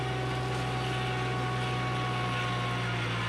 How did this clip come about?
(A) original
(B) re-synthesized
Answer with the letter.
A